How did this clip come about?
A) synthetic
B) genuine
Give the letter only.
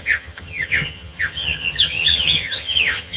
A